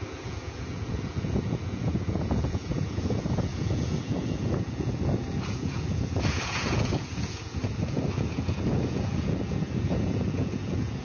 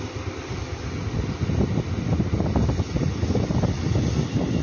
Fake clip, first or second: first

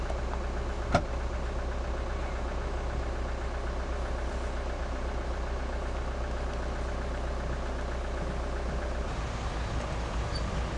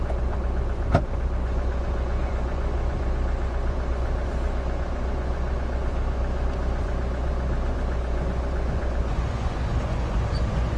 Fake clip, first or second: second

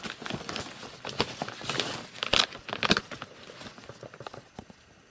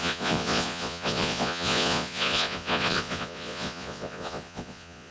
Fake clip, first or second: second